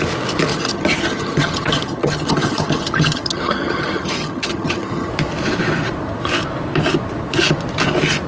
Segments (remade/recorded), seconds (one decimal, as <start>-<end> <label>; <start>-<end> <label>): 0.0-0.5 recorded; 0.5-5.1 remade; 5.1-8.3 recorded